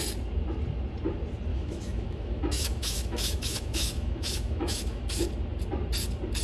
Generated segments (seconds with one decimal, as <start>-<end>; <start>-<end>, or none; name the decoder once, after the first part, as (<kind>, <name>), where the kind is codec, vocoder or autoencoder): 1.5-5.3 (autoencoder, DAC-VAE)